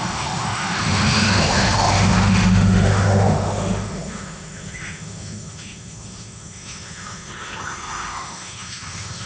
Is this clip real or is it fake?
fake